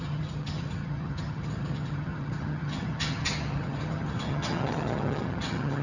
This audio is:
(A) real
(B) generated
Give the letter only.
B